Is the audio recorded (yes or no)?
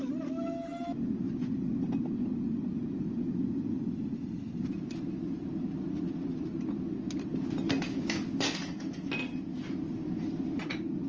yes